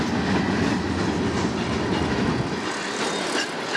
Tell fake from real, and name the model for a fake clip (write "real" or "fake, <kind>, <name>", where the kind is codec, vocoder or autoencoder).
real